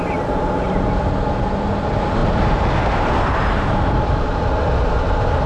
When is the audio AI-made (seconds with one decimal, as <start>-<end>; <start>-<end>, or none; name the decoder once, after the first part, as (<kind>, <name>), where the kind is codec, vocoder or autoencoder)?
none